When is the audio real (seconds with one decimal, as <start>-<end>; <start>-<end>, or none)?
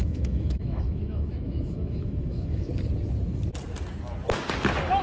2.7-5.0